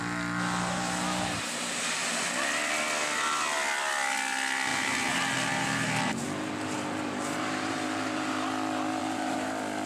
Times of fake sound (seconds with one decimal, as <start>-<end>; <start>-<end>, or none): 4.7-8.4; 9.0-9.5